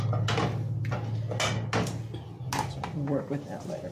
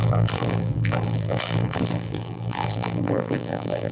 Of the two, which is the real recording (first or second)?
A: first